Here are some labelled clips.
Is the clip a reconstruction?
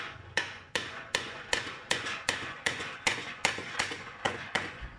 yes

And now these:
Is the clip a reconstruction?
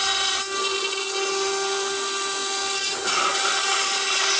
no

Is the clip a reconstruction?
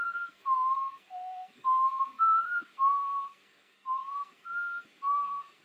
yes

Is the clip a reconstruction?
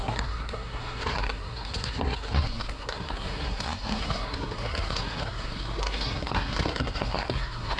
yes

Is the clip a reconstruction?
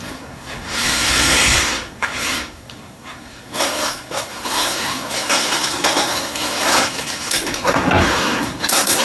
yes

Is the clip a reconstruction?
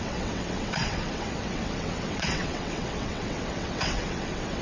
yes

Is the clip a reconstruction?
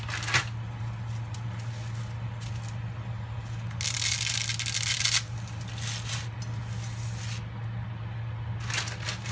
no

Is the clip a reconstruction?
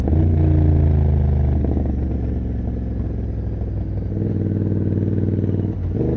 no